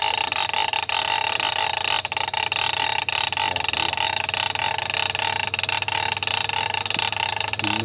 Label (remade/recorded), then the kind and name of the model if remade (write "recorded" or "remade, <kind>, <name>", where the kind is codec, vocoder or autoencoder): recorded